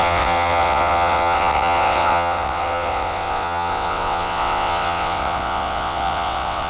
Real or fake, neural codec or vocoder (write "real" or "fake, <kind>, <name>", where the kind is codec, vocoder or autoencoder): fake, vocoder, WaveNeXt